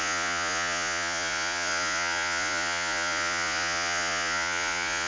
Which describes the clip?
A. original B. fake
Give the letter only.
B